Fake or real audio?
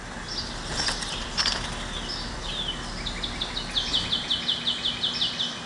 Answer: real